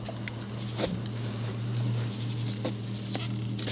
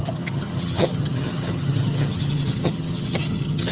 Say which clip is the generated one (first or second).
second